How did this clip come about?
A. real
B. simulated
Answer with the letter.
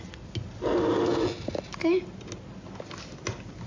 A